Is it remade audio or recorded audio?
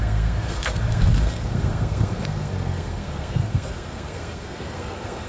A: remade